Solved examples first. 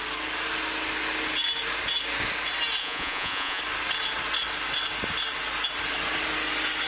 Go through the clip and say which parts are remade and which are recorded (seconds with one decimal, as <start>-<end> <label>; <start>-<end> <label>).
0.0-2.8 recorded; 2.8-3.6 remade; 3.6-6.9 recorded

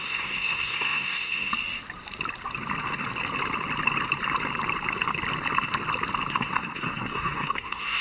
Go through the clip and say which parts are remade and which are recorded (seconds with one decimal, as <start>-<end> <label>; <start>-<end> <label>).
0.0-1.5 remade; 1.5-6.3 recorded; 6.3-8.0 remade

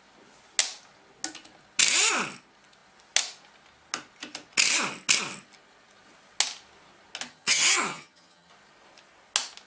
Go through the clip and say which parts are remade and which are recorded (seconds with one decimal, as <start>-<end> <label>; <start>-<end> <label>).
0.0-7.3 recorded; 7.3-8.5 remade; 8.5-9.7 recorded

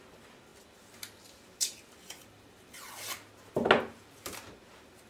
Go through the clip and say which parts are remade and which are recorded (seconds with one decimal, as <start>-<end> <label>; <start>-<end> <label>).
0.0-5.1 recorded